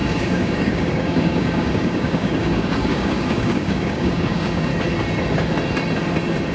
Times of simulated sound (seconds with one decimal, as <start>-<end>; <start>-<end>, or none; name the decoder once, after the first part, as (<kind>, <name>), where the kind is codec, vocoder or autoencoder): 0.0-4.7 (codec, DAC)